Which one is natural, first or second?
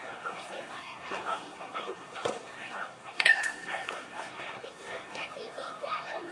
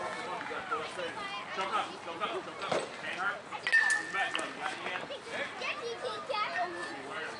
second